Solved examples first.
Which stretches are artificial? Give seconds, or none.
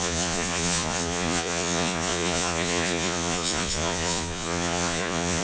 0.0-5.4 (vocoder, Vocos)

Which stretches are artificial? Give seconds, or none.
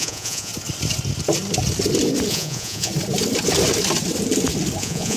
0.0-0.5 (vocoder, Vocos); 2.3-2.9; 4.8-5.2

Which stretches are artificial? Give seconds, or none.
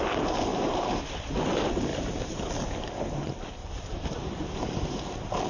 0.5-1.0 (vocoder, BigVGAN v2); 1.9-2.5; 3.6-4.9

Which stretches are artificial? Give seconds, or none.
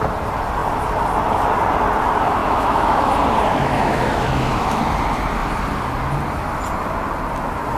2.4-3.1 (autoencoder, DAC-VAE); 3.5-4.8